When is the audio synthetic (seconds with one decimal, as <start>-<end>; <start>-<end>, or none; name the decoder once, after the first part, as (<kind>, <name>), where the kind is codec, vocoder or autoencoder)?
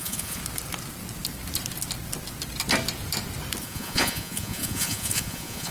0.0-0.4 (vocoder, Vocos); 3.6-5.7